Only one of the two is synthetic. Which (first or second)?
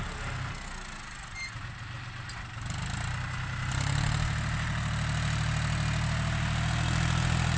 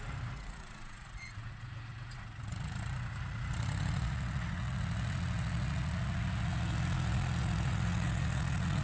second